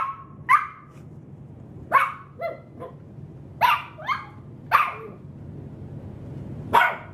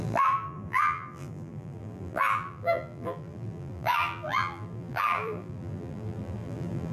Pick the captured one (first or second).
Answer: first